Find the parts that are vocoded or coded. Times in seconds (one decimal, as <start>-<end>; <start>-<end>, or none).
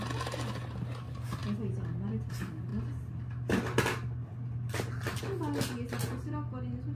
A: none